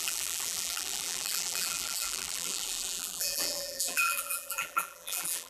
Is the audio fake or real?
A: fake